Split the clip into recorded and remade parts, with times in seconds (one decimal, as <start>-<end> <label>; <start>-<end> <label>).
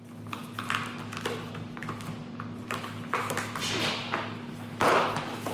0.0-5.5 recorded